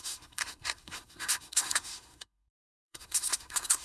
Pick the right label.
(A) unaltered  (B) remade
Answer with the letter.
B